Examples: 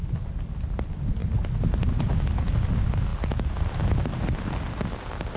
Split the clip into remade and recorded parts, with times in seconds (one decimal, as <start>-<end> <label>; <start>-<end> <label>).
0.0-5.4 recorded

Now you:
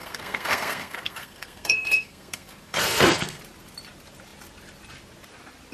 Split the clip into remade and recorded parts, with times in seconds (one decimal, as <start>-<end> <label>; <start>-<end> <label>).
0.0-3.4 remade; 3.4-5.7 recorded

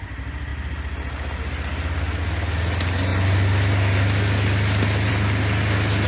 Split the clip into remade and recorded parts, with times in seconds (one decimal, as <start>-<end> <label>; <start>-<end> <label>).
0.0-6.1 recorded

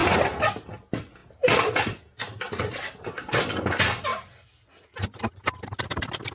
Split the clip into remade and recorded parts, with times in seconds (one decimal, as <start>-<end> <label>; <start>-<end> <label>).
0.0-6.3 recorded

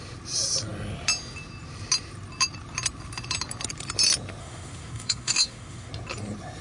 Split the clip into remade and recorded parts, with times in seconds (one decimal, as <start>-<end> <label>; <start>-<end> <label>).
0.0-4.4 recorded; 4.4-5.9 remade; 5.9-6.6 recorded

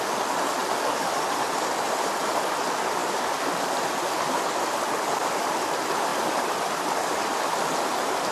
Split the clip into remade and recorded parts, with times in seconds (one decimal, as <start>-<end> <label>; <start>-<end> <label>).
0.0-8.3 recorded

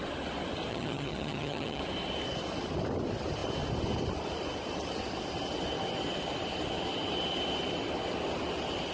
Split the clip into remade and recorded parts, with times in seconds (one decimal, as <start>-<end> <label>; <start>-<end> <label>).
0.0-0.7 recorded; 0.7-1.8 remade; 1.8-8.9 recorded